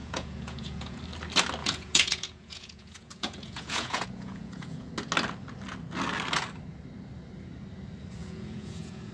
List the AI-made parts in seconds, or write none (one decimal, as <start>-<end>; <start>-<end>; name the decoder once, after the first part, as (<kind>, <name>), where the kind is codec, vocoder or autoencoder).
0.0-1.0 (vocoder, Vocos); 1.6-4.9; 8.2-9.1

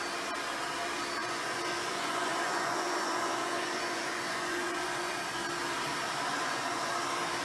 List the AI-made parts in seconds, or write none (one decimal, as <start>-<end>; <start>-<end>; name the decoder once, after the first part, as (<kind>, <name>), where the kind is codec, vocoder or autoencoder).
1.2-5.2 (vocoder, Vocos); 6.3-6.9

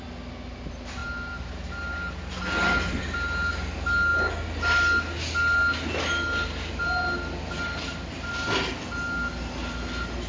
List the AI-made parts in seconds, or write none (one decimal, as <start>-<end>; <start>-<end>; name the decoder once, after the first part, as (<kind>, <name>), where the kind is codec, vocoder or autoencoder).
none

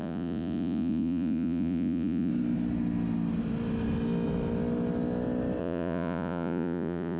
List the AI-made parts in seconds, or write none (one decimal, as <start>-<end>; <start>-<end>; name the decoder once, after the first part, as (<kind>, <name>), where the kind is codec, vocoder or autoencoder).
0.0-2.3 (vocoder, Vocos); 5.6-7.2

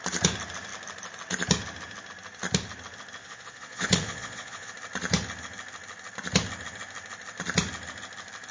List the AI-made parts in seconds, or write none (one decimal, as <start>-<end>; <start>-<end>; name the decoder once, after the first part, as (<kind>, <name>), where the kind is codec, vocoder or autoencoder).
3.2-4.7 (vocoder, Vocos)

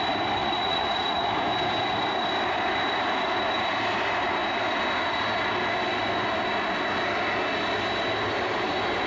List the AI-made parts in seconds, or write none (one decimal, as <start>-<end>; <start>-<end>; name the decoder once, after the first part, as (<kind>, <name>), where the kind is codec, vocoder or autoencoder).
0.4-1.3 (vocoder, Vocos)